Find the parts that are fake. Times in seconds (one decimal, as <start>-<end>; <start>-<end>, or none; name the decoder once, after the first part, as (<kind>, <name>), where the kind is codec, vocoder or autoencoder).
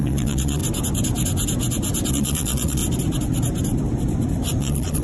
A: 0.0-0.6 (vocoder, Vocos); 2.1-2.8; 4.6-5.0